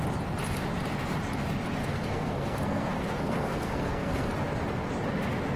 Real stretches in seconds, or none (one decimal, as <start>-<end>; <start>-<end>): 0.0-1.8; 4.3-5.6